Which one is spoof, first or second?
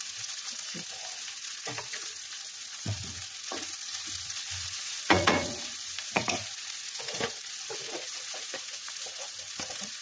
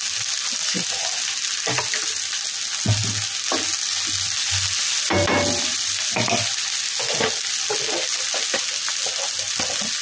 first